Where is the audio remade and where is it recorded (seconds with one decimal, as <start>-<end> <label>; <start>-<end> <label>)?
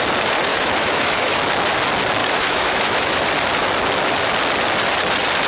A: 0.0-0.5 recorded; 0.5-1.3 remade; 1.3-2.2 recorded; 2.2-3.3 remade; 3.3-5.5 recorded